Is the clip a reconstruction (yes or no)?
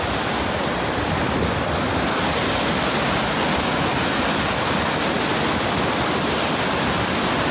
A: no